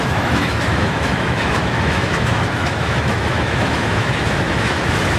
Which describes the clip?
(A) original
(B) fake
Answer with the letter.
B